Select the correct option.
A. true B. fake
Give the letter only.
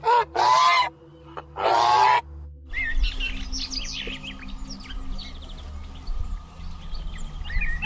A